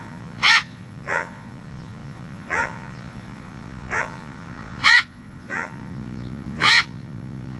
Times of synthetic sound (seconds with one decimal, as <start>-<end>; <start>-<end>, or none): 0.0-7.6